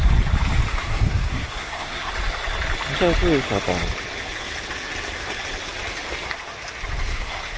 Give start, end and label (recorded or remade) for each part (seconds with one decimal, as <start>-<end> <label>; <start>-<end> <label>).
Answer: 0.0-0.7 recorded; 0.7-2.1 remade; 2.1-7.1 recorded; 7.1-7.6 remade